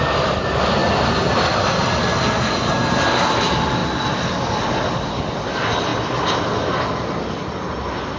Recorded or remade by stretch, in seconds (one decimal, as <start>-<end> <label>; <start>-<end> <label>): 0.0-8.2 recorded